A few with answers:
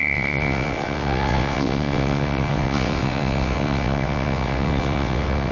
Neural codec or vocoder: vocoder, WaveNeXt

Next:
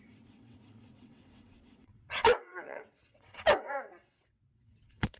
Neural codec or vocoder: vocoder, WaveNeXt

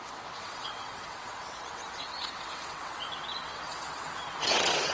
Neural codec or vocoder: vocoder, WaveNeXt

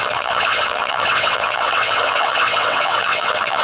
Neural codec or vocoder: vocoder, WaveNeXt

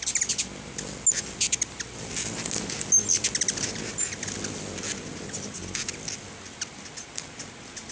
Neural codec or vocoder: none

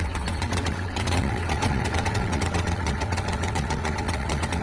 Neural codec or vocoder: vocoder, WaveNeXt